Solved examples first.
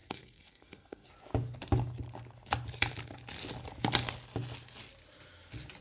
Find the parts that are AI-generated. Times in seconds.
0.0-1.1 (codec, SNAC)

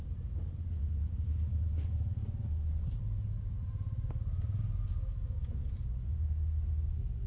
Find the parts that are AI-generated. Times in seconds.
none

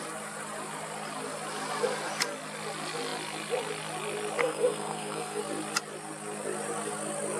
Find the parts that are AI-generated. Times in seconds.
4.4-5.4 (codec, SNAC)